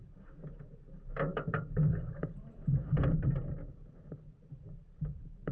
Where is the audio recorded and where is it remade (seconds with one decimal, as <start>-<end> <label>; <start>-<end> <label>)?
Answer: 0.0-5.5 remade